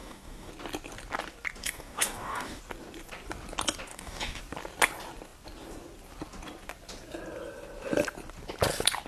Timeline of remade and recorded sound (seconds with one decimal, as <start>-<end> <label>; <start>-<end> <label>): 0.0-0.5 remade; 0.5-1.6 recorded; 1.6-2.6 remade; 2.6-3.9 recorded; 3.9-4.4 remade; 4.4-9.1 recorded